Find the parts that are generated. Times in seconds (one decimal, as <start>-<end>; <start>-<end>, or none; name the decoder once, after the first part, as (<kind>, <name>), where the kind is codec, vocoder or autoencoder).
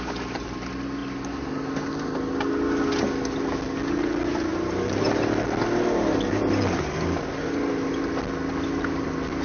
none